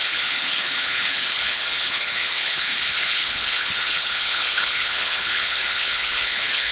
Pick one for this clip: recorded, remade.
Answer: remade